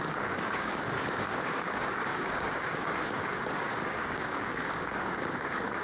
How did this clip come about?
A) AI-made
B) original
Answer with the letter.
A